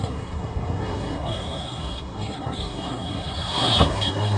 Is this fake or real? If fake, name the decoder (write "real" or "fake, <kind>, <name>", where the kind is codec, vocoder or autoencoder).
fake, codec, SNAC